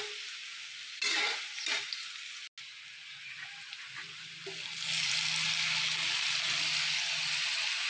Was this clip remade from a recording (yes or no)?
no